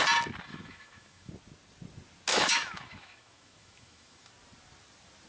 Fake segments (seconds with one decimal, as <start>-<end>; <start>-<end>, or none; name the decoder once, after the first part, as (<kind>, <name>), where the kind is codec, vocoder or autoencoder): 0.5-1.3 (autoencoder, DAC-VAE); 2.3-4.3